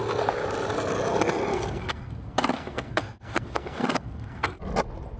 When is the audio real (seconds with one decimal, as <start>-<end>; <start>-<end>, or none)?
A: 0.0-1.5; 4.6-5.2